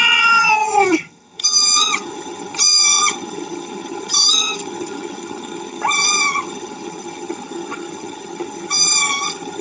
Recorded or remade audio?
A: remade